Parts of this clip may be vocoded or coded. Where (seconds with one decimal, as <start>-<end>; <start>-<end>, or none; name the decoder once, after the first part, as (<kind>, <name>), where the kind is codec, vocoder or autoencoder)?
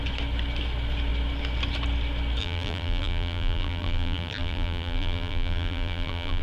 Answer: 2.4-6.4 (vocoder, BigVGAN v2)